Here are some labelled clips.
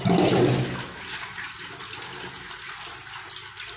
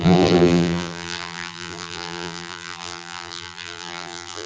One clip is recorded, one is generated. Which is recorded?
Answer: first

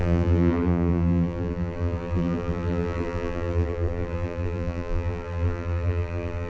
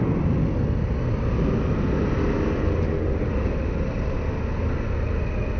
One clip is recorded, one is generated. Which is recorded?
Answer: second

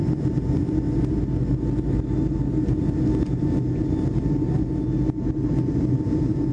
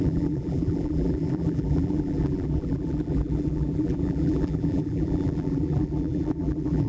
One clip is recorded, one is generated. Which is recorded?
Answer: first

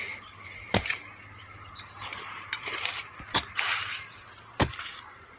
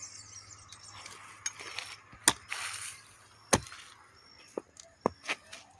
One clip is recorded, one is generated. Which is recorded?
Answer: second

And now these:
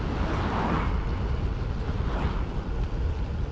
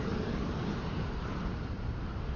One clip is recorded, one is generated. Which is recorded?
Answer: first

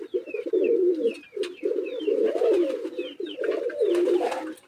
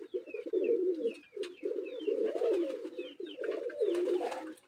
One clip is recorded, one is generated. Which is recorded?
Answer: first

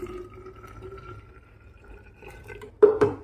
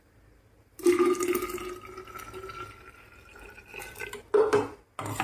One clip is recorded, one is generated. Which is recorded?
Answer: second